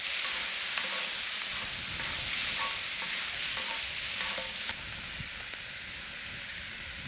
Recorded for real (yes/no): yes